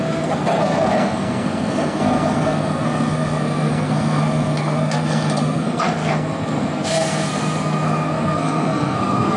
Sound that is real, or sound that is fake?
fake